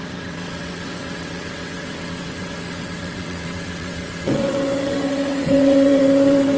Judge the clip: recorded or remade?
remade